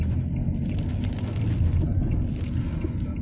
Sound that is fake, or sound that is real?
real